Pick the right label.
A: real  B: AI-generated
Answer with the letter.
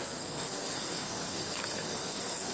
B